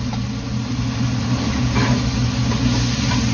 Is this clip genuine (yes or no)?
yes